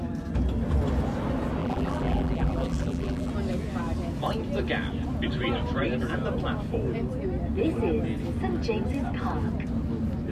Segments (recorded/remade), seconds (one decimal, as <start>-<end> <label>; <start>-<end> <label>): 0.0-1.6 recorded; 1.6-3.3 remade; 3.3-10.3 recorded